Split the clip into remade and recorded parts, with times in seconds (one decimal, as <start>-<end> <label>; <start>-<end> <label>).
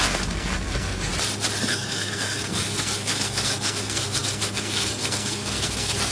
0.0-1.1 remade; 1.1-1.7 recorded; 1.7-6.1 remade